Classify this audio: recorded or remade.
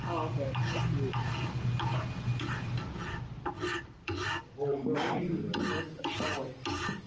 recorded